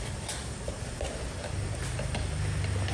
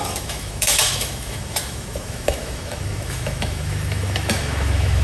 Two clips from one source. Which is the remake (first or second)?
second